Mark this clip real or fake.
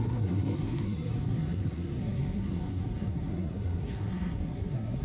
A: fake